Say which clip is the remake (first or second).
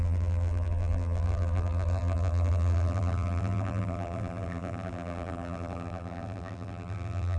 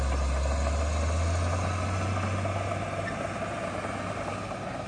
first